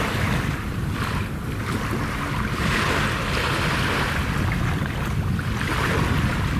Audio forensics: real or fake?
real